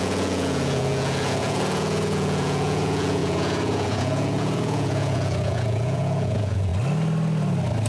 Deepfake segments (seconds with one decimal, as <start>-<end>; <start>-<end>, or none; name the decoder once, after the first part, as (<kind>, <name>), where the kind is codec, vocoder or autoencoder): 0.0-6.7 (vocoder, Vocos)